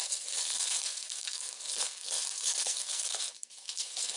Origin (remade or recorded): remade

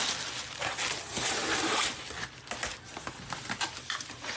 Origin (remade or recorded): recorded